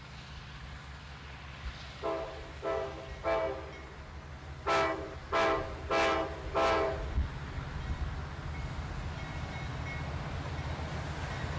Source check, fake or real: real